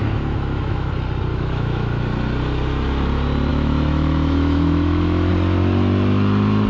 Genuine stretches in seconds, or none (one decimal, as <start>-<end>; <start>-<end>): 0.9-1.3; 2.0-3.5; 5.3-6.7